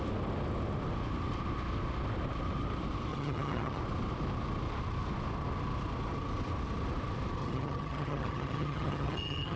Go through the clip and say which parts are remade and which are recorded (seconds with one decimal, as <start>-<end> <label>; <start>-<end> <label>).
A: 0.0-3.1 recorded; 3.1-3.8 remade; 3.8-7.4 recorded; 7.4-9.6 remade